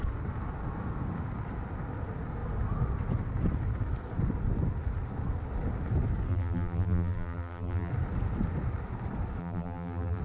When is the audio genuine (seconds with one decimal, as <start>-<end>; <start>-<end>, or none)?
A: 0.0-6.3; 7.9-9.4